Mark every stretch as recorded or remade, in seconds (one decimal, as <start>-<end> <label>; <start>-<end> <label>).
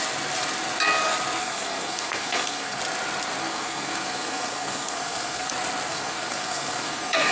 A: 0.0-1.4 recorded; 1.4-2.8 remade; 2.8-3.4 recorded; 3.4-5.5 remade; 5.5-5.9 recorded; 5.9-7.3 remade